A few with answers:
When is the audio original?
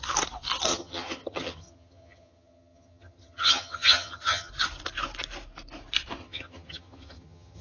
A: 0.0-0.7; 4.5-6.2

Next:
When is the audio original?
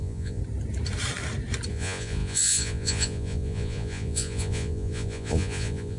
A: 0.4-1.7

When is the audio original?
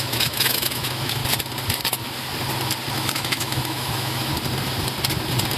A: 1.2-2.9; 4.3-5.6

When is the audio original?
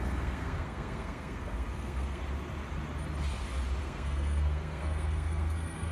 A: 2.2-3.8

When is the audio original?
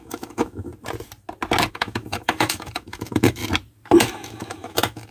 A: 0.7-1.7; 3.4-4.0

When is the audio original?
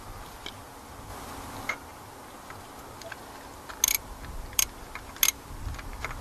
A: 0.0-6.2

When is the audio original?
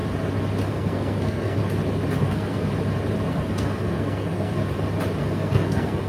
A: 0.0-0.7; 1.6-2.2; 2.7-3.3; 4.6-5.2